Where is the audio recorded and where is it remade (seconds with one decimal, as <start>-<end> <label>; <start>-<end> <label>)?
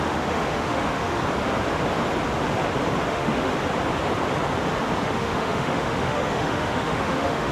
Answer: 0.0-1.2 remade; 1.2-3.1 recorded; 3.1-3.5 remade; 3.5-5.0 recorded; 5.0-7.5 remade